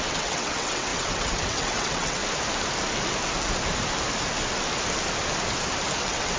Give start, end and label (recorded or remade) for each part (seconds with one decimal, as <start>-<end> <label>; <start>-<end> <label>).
0.0-2.2 remade; 2.2-6.0 recorded; 6.0-6.4 remade